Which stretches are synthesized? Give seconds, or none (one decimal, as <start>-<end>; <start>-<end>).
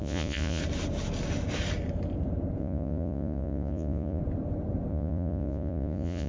0.0-0.6; 2.6-4.2; 4.9-6.3